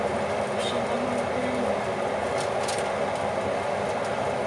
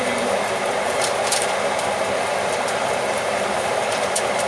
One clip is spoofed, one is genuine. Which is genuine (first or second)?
first